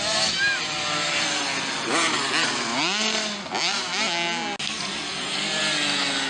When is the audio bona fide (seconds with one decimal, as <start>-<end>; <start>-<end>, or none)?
0.0-6.3